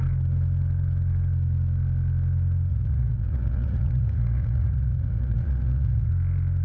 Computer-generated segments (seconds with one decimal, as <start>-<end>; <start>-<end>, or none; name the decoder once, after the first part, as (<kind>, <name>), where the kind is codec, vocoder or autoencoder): 2.7-6.1 (vocoder, Vocos)